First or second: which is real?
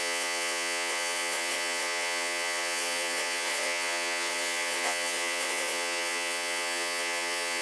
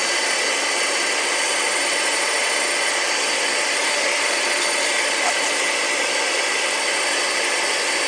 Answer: second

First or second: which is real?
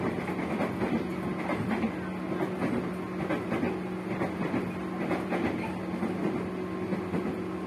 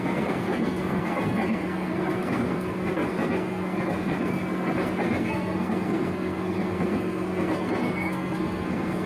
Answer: first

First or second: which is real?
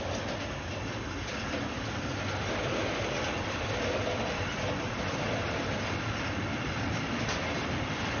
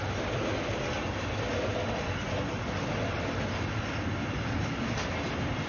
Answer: second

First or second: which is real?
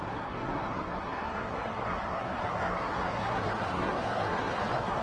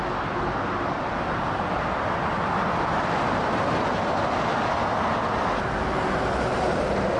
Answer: second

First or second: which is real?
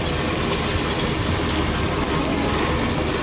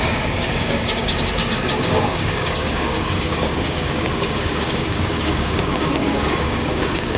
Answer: first